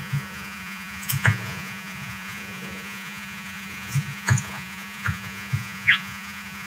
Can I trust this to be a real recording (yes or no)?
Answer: no